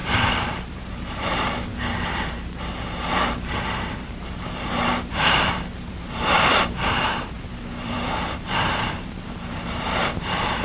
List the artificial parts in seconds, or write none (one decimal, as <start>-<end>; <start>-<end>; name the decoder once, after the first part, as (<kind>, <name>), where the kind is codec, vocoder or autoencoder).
0.0-10.6 (vocoder, BigVGAN v2)